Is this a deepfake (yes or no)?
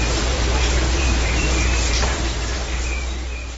yes